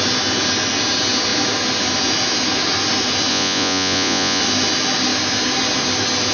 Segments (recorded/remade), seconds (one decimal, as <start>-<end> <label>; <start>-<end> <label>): 0.0-3.3 recorded; 3.3-4.4 remade; 4.4-6.3 recorded